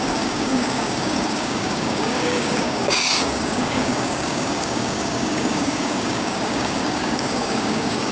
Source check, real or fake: fake